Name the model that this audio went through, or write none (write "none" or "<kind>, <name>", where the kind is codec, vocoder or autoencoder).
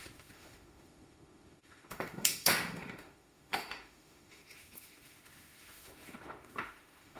autoencoder, DAC-VAE